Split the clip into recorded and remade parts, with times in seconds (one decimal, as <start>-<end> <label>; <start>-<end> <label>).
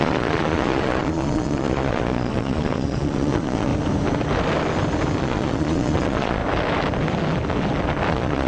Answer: 0.0-3.7 remade; 3.7-5.2 recorded; 5.2-6.4 remade; 6.4-8.1 recorded; 8.1-8.5 remade